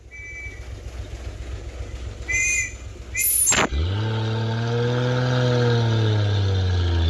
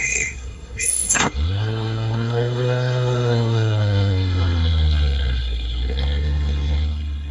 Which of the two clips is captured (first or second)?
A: first